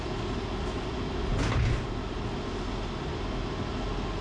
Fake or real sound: real